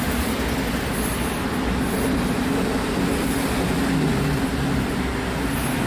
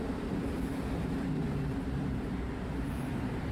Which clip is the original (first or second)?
first